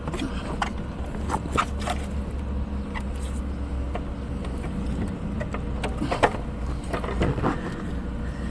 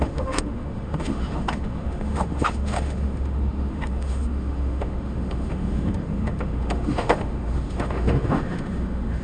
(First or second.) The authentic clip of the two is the first